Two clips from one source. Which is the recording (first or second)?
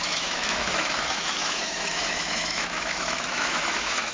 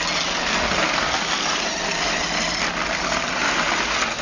second